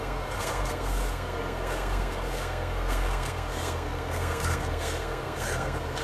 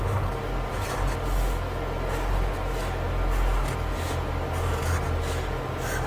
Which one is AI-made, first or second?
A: first